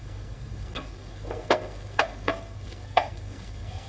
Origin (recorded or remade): remade